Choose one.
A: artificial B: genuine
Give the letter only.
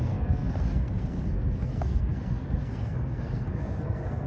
A